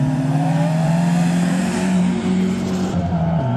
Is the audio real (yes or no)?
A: no